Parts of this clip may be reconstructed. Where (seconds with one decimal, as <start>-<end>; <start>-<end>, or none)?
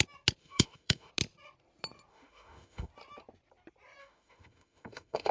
0.4-1.1; 2.1-2.9; 4.0-5.3